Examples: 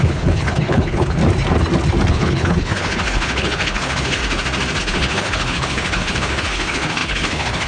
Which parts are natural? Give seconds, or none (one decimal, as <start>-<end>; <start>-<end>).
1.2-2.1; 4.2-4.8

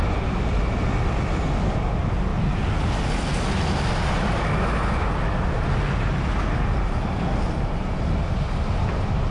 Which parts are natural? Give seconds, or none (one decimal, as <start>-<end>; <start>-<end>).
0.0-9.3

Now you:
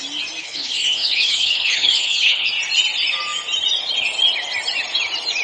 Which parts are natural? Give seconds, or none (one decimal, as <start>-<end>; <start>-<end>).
0.0-0.4; 2.5-5.4